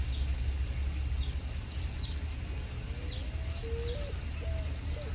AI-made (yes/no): no